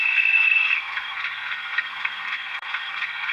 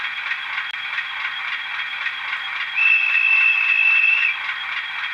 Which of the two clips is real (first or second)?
second